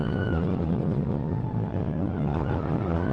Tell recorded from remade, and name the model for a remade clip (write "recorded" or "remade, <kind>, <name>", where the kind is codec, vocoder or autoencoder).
remade, vocoder, Vocos